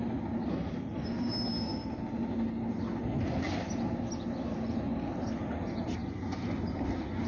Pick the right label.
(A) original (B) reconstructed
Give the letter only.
A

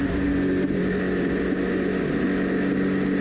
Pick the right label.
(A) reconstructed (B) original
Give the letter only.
B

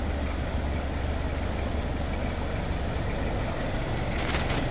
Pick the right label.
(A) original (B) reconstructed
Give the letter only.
A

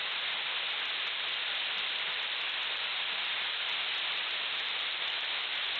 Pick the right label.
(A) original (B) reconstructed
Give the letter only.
B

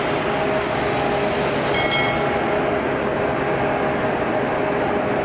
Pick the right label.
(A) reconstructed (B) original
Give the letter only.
B